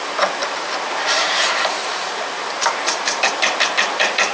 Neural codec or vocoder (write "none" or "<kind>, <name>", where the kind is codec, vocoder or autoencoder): vocoder, BigVGAN v2